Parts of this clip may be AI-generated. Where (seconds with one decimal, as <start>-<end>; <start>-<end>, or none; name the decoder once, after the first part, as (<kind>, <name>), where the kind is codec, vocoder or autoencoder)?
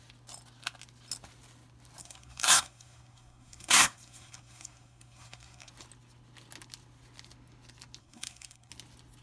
2.0-5.7 (codec, SNAC); 8.0-8.7